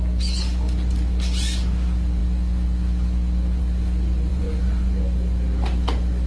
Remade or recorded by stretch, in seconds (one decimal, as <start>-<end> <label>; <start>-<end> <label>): 0.0-4.3 recorded; 4.3-5.0 remade; 5.0-6.3 recorded

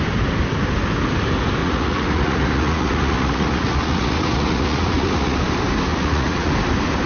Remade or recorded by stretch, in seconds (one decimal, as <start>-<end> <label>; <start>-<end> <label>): 0.0-1.6 recorded; 1.6-5.4 remade; 5.4-5.9 recorded; 5.9-6.5 remade; 6.5-7.1 recorded

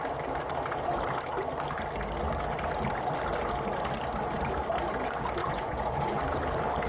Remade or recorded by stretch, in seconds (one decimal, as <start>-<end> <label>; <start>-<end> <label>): 0.0-5.4 recorded; 5.4-6.2 remade; 6.2-6.9 recorded